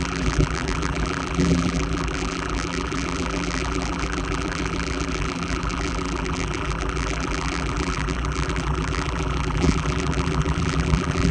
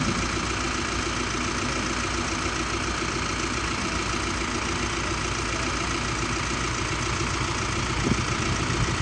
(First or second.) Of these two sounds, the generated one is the first